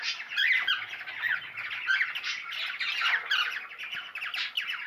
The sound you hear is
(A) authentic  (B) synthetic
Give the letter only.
A